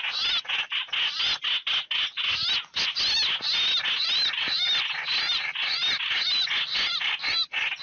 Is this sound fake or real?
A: real